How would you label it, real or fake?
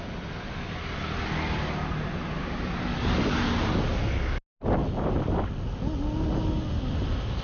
real